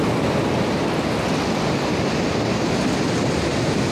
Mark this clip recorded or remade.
recorded